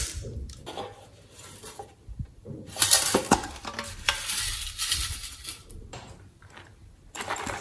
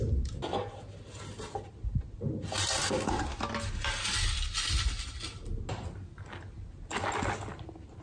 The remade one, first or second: first